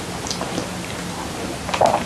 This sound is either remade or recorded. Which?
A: recorded